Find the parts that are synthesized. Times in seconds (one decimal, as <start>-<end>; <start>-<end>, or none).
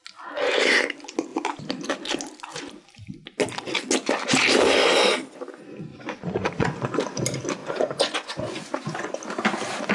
5.9-7.0; 7.6-9.2